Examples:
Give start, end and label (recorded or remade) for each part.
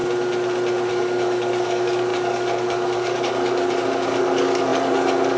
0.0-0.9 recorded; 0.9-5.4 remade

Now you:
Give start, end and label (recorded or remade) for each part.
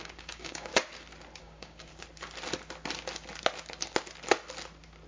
0.0-0.7 remade; 0.7-1.4 recorded; 1.4-1.9 remade; 1.9-5.1 recorded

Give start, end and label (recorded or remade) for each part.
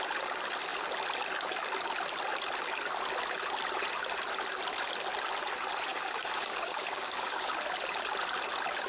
0.0-5.9 recorded; 5.9-7.5 remade; 7.5-8.9 recorded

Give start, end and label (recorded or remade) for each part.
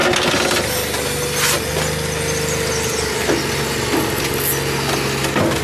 0.0-5.6 recorded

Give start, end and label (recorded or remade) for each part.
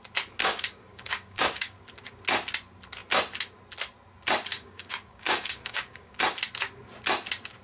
0.0-0.4 recorded; 0.4-1.8 remade; 1.8-4.5 recorded; 4.5-6.2 remade; 6.2-7.6 recorded